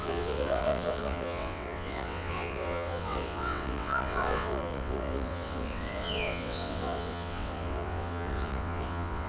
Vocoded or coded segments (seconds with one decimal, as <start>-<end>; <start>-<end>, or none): 0.0-9.3